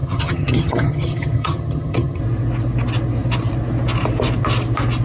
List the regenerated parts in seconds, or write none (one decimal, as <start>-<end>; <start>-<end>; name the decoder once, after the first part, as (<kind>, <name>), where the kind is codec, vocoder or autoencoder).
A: 0.0-2.2 (vocoder, HiFi-GAN)